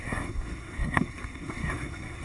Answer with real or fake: fake